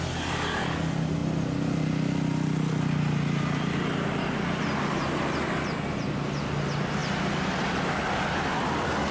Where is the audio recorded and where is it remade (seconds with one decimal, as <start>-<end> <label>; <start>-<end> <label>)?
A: 0.0-9.1 recorded